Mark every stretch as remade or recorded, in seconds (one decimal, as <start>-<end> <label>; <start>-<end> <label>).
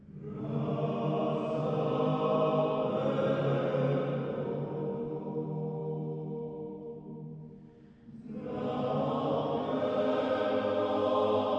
0.0-11.6 recorded